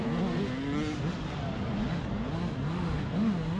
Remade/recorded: recorded